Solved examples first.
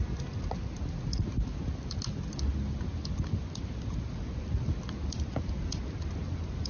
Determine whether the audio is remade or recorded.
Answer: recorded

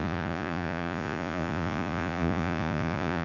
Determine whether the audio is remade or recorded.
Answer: remade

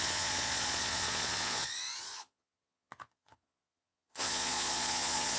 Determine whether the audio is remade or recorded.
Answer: remade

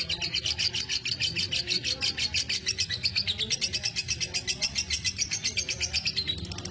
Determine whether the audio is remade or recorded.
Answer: recorded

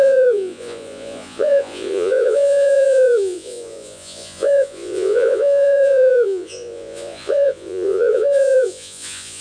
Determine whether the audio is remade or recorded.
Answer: remade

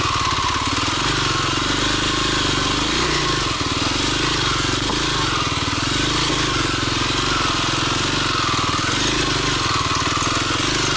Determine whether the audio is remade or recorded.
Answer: recorded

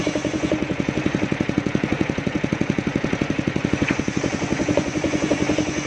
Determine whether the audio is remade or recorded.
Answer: remade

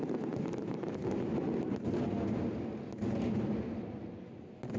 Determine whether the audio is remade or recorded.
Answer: recorded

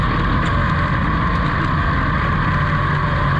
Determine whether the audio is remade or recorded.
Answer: recorded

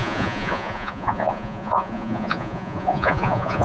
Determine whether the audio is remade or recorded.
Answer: remade